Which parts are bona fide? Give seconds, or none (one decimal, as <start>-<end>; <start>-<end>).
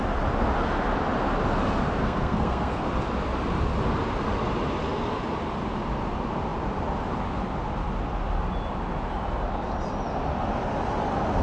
0.0-2.0; 2.9-11.4